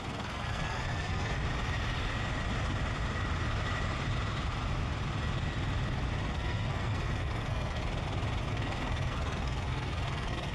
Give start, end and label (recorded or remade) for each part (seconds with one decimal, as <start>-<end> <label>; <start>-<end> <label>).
0.0-1.5 remade; 1.5-6.2 recorded; 6.2-7.8 remade; 7.8-8.5 recorded; 8.5-10.5 remade